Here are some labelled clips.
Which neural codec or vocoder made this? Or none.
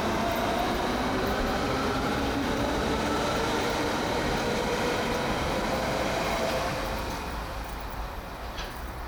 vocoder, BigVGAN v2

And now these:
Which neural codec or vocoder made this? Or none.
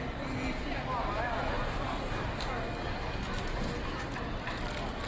none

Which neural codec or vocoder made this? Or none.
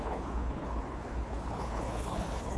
codec, HILCodec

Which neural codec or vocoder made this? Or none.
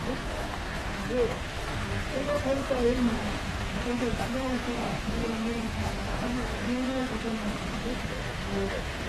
autoencoder, DAC-VAE